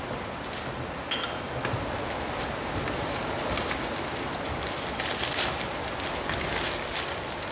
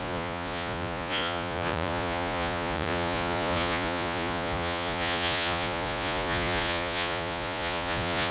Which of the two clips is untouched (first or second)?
first